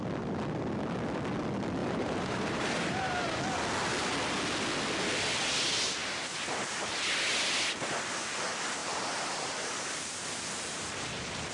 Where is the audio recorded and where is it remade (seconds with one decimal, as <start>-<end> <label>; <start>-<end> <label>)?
0.0-1.8 recorded; 1.8-3.4 remade; 3.4-6.0 recorded; 6.0-6.9 remade; 6.9-8.8 recorded; 8.8-9.7 remade; 9.7-11.5 recorded